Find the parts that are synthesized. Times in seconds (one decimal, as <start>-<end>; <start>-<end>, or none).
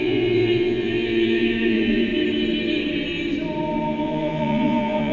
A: 0.0-2.1; 4.0-5.1